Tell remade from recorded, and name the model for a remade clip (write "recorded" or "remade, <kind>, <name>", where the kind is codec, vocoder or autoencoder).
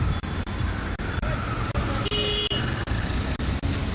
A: recorded